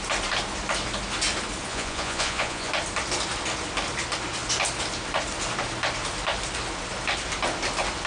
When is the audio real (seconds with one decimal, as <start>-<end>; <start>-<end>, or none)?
0.0-1.7; 2.7-8.1